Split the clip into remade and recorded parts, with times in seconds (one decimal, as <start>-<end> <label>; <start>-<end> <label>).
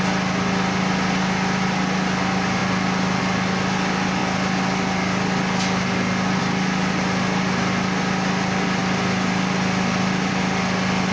0.0-11.1 recorded